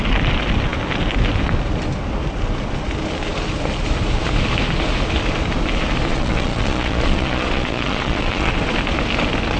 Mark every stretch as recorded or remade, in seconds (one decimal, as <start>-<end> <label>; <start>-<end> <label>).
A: 0.0-6.1 recorded; 6.1-8.5 remade; 8.5-9.6 recorded